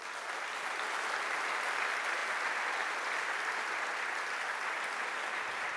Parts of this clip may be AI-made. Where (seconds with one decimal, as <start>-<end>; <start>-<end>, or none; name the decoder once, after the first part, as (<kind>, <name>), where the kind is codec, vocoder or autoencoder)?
none